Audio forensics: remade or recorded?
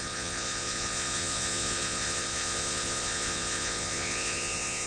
remade